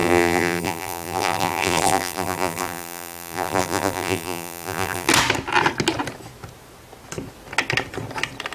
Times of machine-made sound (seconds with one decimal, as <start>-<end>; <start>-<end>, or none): 0.0-5.1